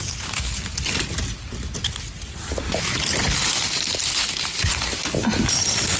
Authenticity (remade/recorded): recorded